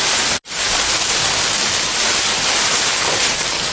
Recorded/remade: recorded